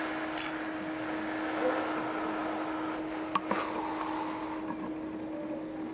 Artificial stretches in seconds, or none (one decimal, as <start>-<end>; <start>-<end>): none